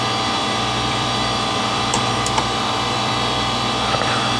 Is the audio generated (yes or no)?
yes